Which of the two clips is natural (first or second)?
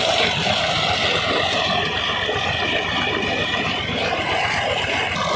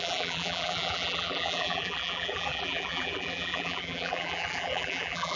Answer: first